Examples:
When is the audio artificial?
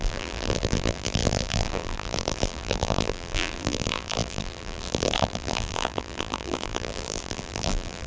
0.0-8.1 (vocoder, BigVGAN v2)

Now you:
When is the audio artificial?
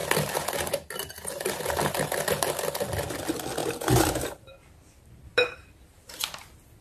3.6-4.5 (vocoder, BigVGAN v2); 5.3-6.2